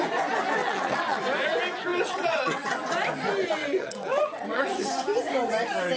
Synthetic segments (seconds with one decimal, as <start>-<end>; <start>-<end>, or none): 0.6-1.2; 1.9-2.9; 3.6-4.8